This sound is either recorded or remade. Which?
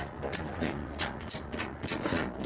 remade